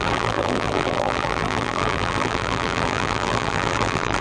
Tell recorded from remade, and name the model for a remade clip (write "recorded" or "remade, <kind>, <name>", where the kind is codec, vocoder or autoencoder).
remade, vocoder, BigVGAN v2